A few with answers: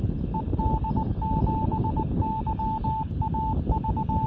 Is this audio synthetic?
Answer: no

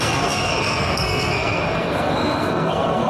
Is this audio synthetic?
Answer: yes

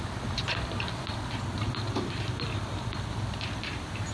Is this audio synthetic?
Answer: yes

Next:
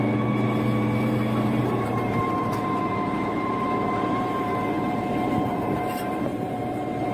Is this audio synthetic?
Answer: yes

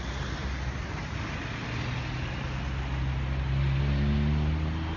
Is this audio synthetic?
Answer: no